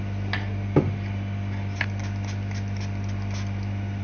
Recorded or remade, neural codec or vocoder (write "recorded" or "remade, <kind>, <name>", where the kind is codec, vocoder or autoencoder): recorded